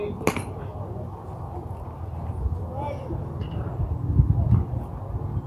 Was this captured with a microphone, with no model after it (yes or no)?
yes